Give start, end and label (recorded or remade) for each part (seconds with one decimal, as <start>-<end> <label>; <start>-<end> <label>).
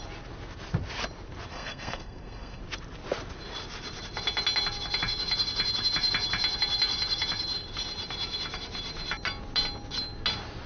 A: 0.0-1.5 recorded; 1.5-2.6 remade; 2.6-10.7 recorded